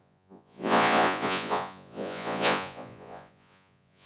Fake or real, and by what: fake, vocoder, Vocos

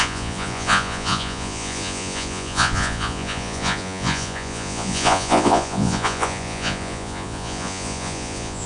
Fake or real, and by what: fake, vocoder, Vocos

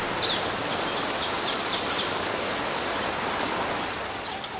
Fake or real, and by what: real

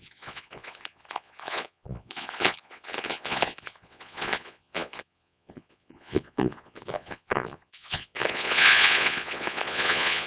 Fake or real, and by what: fake, vocoder, Vocos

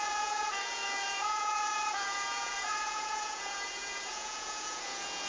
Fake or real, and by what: fake, vocoder, Vocos